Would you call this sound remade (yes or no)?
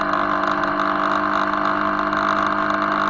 no